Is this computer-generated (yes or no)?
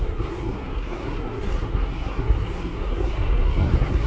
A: yes